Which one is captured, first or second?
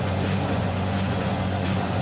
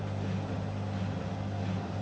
second